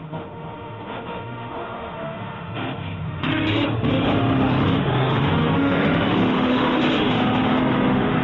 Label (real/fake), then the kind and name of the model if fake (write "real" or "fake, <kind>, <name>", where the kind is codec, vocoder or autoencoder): fake, autoencoder, DAC-VAE